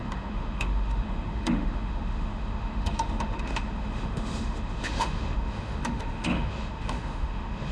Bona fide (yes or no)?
no